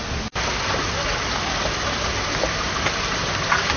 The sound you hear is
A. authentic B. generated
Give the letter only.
A